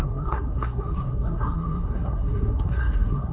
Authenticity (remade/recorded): remade